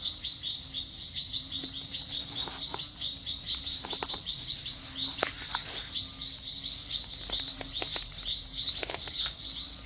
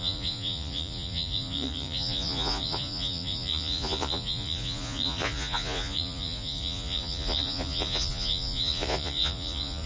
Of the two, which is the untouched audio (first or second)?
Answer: first